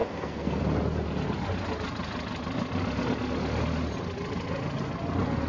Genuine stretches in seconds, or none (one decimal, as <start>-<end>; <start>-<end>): 0.6-5.5